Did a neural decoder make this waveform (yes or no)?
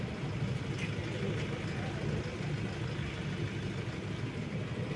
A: no